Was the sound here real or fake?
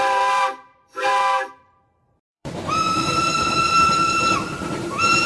fake